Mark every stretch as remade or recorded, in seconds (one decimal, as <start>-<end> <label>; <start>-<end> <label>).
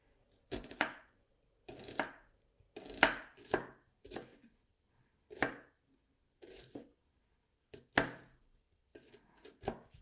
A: 0.0-0.4 recorded; 0.4-1.3 remade; 1.3-10.0 recorded